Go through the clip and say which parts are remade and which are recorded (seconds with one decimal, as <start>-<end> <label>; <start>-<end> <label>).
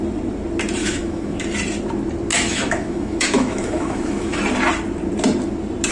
0.0-0.8 recorded; 0.8-1.4 remade; 1.4-2.3 recorded; 2.3-4.4 remade; 4.4-5.9 recorded